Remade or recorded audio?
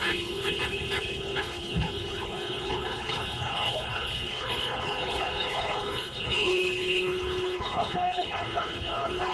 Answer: remade